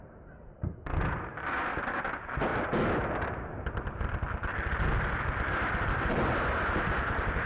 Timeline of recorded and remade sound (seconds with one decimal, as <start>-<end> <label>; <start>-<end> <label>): 0.0-7.5 recorded

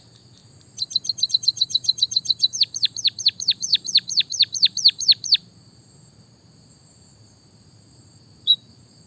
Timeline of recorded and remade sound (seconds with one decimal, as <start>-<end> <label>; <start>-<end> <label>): 0.0-0.4 remade; 0.4-1.3 recorded; 1.3-9.1 remade